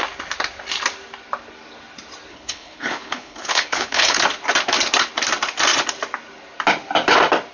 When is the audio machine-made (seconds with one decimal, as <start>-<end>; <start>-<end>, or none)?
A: 2.3-4.2